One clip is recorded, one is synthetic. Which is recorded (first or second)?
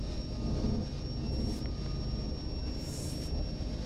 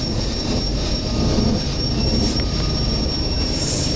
first